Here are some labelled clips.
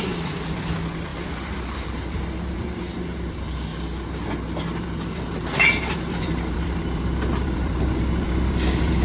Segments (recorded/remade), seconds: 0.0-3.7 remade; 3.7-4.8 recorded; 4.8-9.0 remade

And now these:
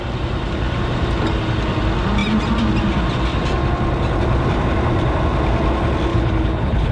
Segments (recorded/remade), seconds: 0.0-6.1 recorded; 6.1-6.9 remade